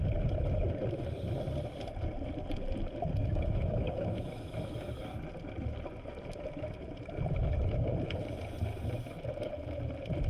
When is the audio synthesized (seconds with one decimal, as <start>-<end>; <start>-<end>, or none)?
3.2-5.1